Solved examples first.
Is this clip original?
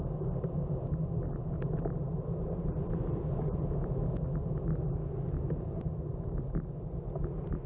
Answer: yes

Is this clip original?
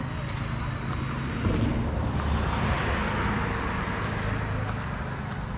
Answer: yes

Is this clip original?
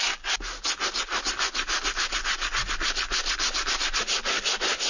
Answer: yes